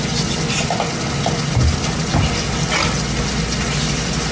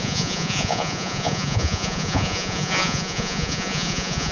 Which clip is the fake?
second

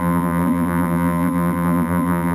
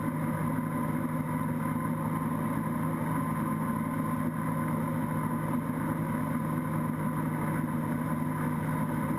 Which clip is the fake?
first